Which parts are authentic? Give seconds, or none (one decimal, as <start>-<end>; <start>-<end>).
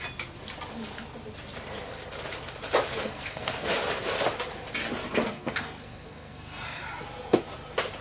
0.0-2.9; 3.7-5.2; 6.8-8.0